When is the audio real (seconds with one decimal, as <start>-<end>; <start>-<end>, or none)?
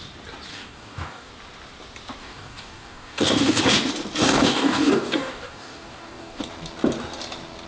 0.0-0.5; 1.3-2.2; 3.6-4.3; 6.4-7.7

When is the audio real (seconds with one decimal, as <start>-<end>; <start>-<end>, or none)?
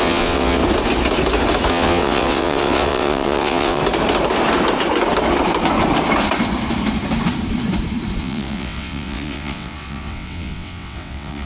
0.6-1.7; 3.8-8.2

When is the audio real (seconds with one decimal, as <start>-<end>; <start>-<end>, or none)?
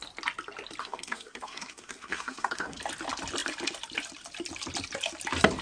0.0-0.8; 2.8-5.6